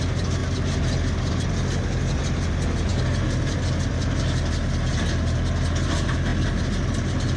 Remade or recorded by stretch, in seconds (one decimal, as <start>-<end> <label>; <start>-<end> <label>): 0.0-7.4 recorded